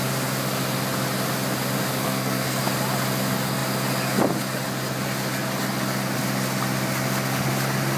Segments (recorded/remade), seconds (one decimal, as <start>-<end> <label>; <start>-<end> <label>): 0.0-2.0 recorded; 2.0-2.6 remade; 2.6-8.0 recorded